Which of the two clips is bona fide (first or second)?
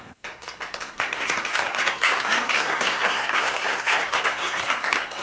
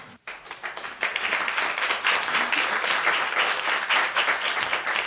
second